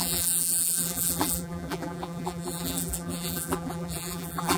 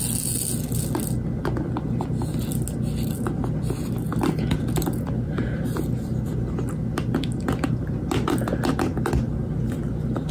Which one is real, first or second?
second